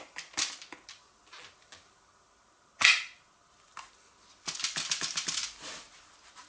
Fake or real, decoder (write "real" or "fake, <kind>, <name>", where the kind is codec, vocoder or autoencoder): real